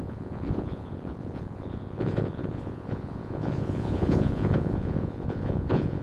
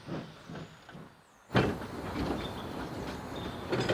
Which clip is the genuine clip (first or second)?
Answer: second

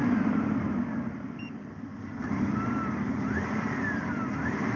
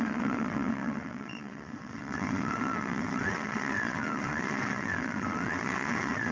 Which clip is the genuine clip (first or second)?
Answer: first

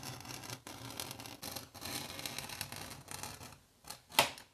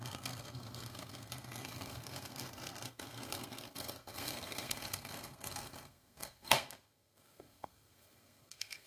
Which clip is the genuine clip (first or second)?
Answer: first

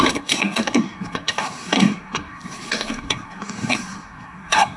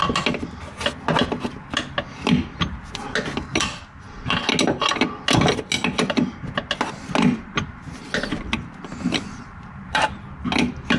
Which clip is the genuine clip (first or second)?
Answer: second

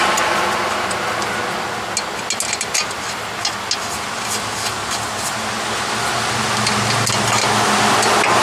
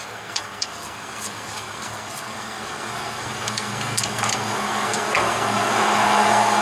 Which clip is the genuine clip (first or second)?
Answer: first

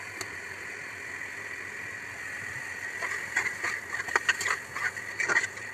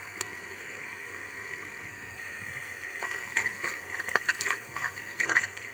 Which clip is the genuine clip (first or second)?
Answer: first